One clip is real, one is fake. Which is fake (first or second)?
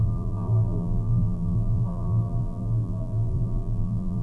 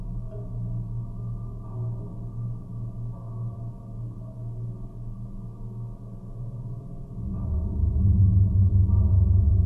first